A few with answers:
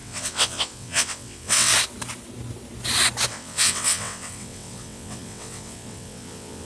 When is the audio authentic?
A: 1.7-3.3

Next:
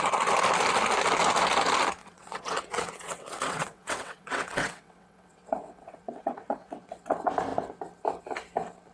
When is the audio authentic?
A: 0.0-2.0; 7.0-8.9

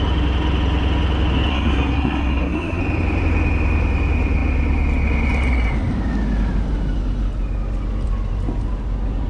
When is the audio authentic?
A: 0.0-1.5; 2.8-9.3

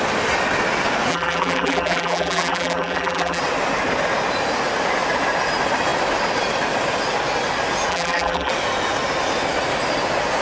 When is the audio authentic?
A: 0.0-1.1; 3.4-7.9; 8.5-10.4

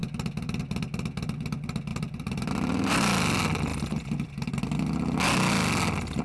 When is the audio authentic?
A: 0.0-1.9; 2.9-3.7; 4.5-6.2

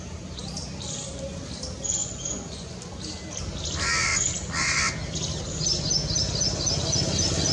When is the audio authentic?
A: 0.0-2.0; 2.8-7.5